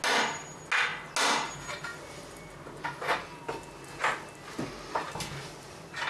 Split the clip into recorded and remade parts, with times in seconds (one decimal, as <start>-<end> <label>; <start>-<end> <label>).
0.0-6.1 recorded